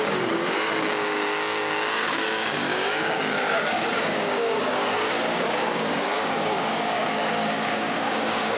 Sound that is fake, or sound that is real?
fake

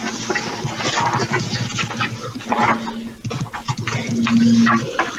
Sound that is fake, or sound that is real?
real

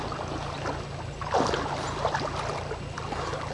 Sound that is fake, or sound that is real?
real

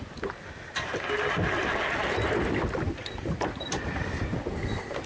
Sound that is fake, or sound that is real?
real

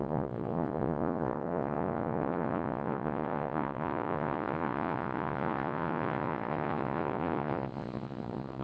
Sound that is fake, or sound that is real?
fake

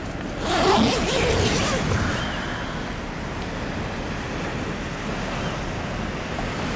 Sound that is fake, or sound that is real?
real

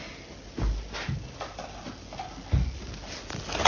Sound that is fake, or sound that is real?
real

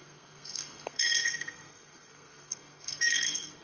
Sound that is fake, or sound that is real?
fake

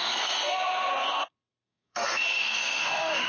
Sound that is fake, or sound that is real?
fake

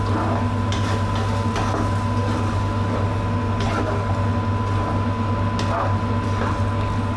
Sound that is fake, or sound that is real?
real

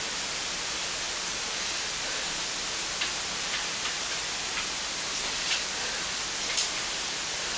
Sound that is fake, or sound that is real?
fake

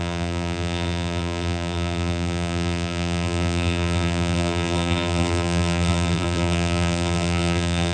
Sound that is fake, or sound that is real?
fake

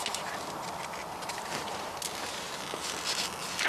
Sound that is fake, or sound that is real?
real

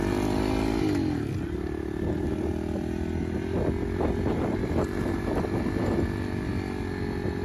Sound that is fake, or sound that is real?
real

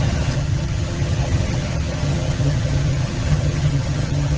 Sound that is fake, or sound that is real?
fake